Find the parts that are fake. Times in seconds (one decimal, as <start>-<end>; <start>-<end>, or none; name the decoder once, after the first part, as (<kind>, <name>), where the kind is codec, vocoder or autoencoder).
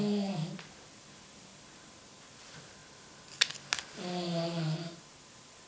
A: none